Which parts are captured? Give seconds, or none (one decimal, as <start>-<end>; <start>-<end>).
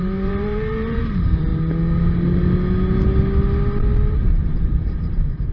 1.5-4.1